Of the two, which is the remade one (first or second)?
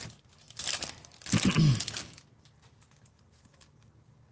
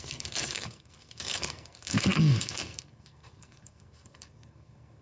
second